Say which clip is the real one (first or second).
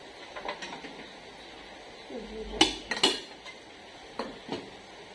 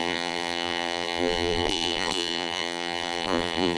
first